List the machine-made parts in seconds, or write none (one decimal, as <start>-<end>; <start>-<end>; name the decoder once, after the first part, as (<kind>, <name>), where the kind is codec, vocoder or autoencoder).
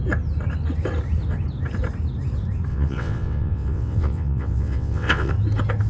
2.7-5.3 (vocoder, WaveNeXt)